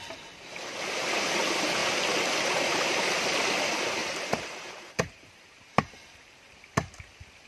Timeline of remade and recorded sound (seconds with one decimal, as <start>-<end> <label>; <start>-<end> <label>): 0.0-4.0 recorded; 4.0-5.8 remade; 5.8-7.5 recorded